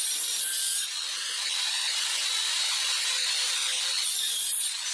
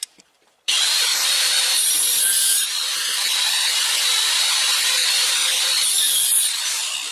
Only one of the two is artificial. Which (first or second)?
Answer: second